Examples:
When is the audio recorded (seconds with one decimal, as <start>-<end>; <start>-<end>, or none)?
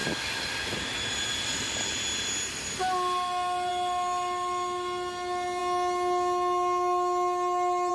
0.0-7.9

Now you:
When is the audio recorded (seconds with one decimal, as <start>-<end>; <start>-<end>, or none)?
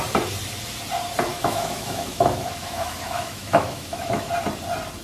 0.0-1.3; 4.3-5.0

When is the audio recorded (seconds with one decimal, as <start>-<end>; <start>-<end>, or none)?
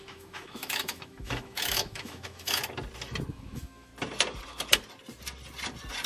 2.6-3.3; 3.9-6.1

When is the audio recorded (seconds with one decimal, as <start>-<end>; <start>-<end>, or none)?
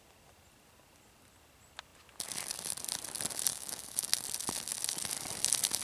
0.0-3.5; 4.1-5.8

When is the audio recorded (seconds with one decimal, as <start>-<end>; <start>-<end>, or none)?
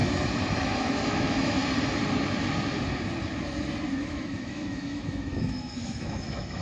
0.0-0.5; 1.6-4.0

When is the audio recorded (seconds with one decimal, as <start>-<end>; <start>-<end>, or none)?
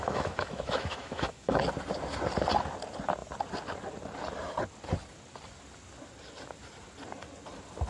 1.6-7.9